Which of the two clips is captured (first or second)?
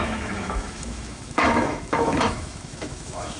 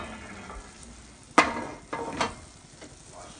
second